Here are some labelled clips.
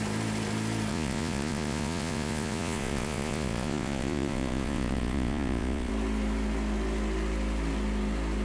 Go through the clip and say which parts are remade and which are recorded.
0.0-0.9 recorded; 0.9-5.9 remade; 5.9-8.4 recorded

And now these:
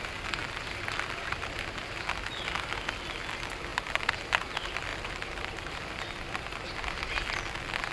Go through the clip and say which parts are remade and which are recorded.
0.0-4.9 recorded; 4.9-5.8 remade; 5.8-7.9 recorded

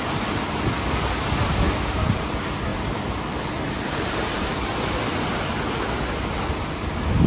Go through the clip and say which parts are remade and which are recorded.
0.0-2.7 recorded; 2.7-4.8 remade; 4.8-7.3 recorded

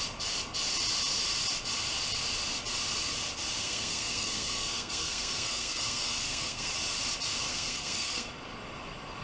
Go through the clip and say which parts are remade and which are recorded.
0.0-3.6 recorded; 3.6-6.7 remade; 6.7-7.5 recorded; 7.5-8.3 remade; 8.3-9.2 recorded